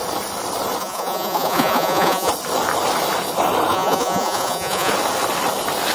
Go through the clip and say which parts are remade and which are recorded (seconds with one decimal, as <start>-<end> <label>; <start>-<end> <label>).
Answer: 0.0-0.8 recorded; 0.8-2.3 remade; 2.3-3.7 recorded; 3.7-4.9 remade; 4.9-5.9 recorded